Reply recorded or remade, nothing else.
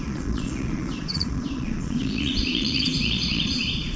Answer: remade